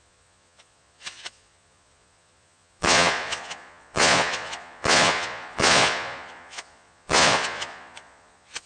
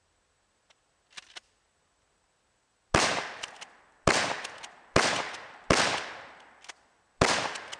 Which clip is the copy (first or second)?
first